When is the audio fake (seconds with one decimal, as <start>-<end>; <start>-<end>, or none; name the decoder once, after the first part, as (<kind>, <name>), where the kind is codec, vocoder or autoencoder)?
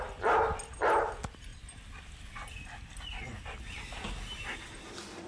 none